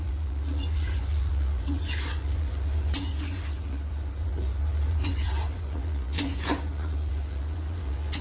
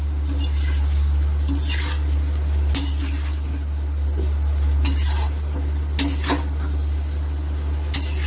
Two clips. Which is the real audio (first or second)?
second